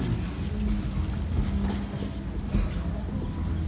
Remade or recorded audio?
recorded